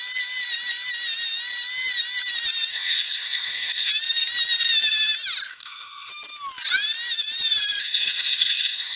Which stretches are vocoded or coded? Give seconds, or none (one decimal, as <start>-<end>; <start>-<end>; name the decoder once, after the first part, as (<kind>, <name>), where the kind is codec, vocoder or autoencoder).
2.7-3.9 (codec, SNAC); 5.5-6.1; 7.8-9.0

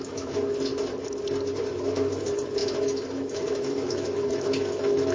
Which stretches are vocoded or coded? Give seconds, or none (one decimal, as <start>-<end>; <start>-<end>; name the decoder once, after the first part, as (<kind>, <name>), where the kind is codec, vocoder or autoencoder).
0.0-0.7 (autoencoder, DAC-VAE); 1.7-5.1

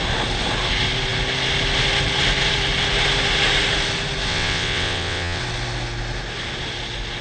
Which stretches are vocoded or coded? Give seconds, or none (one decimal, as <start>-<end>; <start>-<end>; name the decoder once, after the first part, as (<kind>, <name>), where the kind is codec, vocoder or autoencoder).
4.3-5.4 (vocoder, WaveNeXt)

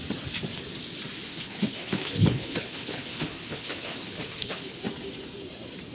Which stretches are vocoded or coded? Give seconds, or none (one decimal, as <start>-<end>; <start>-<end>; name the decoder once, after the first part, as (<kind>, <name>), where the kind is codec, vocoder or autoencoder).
1.3-4.8 (codec, HILCodec)

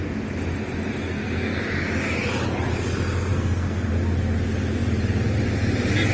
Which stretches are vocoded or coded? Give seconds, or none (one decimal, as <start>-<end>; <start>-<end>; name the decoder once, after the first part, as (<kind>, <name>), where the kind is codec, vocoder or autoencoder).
1.0-1.6 (codec, SNAC); 3.3-3.9

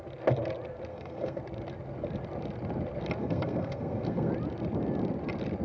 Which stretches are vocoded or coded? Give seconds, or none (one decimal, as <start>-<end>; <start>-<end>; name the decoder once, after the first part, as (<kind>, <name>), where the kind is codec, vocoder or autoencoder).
0.9-1.4 (codec, SNAC); 3.2-4.3

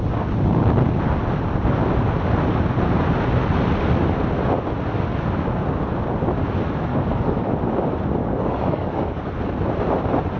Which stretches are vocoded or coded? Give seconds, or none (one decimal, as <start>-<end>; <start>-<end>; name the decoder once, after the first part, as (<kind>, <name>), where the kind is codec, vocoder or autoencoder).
6.9-7.5 (codec, DAC); 8.2-9.3